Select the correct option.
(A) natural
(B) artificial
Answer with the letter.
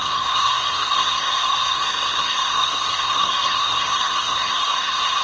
B